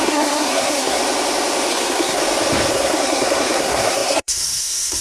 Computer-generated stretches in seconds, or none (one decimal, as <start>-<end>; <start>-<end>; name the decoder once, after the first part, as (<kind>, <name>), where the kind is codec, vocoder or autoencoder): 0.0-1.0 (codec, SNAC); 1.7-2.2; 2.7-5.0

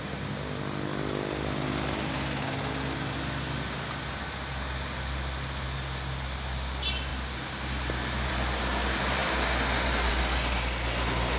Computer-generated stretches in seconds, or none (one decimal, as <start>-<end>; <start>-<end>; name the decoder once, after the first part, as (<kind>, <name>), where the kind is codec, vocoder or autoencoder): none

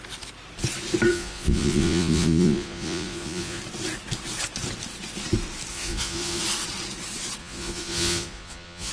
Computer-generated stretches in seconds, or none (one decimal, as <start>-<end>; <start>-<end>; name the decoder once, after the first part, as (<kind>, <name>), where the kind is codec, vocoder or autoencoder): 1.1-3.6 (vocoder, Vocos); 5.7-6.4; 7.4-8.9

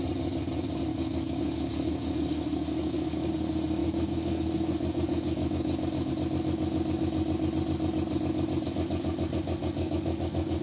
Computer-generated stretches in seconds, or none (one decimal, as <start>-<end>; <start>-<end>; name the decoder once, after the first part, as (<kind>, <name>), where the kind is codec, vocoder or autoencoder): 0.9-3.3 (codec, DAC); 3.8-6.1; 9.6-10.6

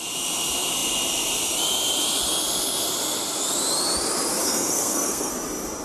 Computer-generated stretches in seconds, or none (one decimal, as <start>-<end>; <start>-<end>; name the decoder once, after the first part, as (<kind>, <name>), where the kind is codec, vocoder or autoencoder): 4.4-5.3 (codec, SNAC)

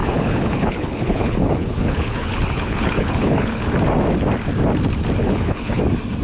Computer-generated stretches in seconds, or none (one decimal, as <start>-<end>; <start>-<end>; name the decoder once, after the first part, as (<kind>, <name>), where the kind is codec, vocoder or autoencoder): 0.0-3.7 (codec, HILCodec); 5.2-5.8